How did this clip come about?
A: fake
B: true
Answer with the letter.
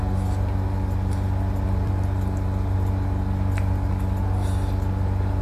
B